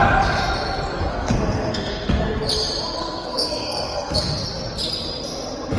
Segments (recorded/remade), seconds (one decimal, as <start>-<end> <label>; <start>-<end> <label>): 0.0-1.1 recorded; 1.1-2.2 remade; 2.2-3.0 recorded; 3.0-4.3 remade; 4.3-5.8 recorded